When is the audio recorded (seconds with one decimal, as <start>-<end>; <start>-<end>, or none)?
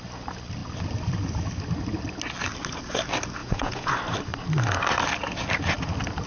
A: 0.0-3.4; 3.9-6.3